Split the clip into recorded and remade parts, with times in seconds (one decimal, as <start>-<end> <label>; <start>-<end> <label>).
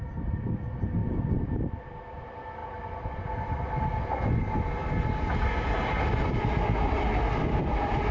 0.0-8.1 recorded